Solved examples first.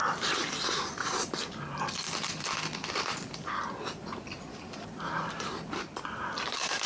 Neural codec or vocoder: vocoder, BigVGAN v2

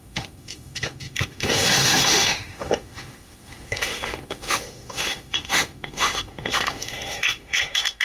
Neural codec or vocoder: autoencoder, DAC-VAE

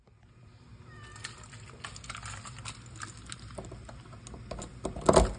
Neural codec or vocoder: none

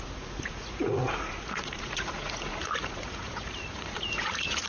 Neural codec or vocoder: vocoder, Vocos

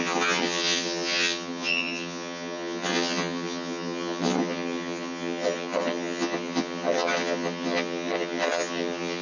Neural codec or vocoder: vocoder, HiFi-GAN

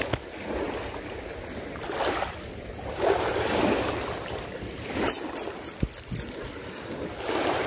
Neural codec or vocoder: none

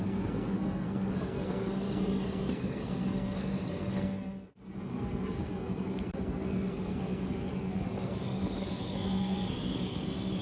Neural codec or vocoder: codec, SNAC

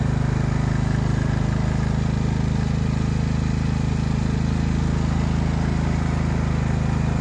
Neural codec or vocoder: none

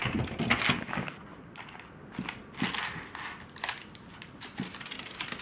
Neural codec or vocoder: none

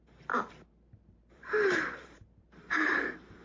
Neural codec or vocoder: vocoder, BigVGAN v2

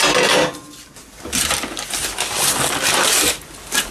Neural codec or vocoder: none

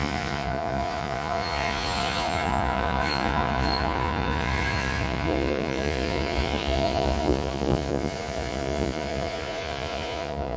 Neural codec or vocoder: vocoder, Vocos